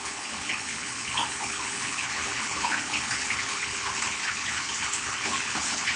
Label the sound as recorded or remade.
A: remade